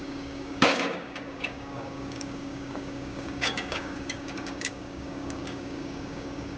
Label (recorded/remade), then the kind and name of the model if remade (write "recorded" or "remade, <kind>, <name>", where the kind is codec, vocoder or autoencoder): remade, codec, DAC